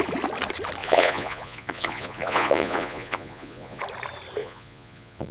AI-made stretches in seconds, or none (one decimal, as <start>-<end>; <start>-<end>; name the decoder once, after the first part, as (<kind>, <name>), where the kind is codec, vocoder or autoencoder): 0.8-3.8 (vocoder, Vocos); 4.4-5.3